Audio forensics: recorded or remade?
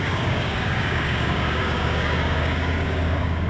remade